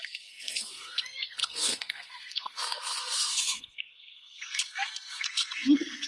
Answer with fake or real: fake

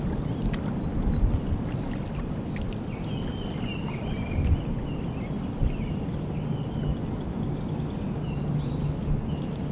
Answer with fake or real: real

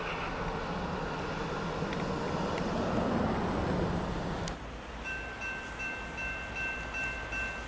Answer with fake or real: real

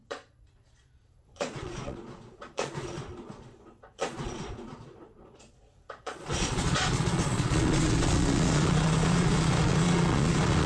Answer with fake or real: fake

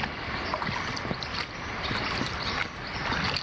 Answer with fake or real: real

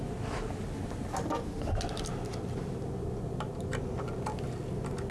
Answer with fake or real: real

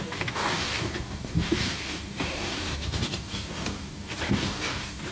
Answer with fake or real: fake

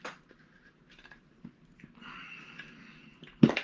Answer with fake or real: real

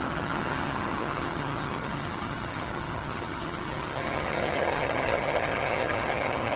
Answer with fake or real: fake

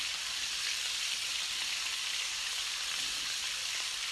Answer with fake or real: real